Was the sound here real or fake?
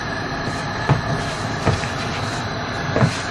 real